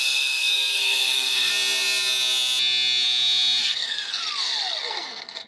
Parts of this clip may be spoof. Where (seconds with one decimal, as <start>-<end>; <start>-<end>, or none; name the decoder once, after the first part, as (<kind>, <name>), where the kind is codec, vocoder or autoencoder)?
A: 0.0-1.5 (codec, SNAC); 3.6-4.2; 4.8-5.5